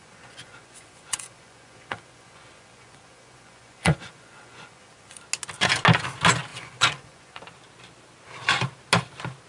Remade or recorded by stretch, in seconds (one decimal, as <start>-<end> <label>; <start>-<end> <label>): 0.0-5.2 remade; 5.2-6.5 recorded; 6.5-7.4 remade; 7.4-9.5 recorded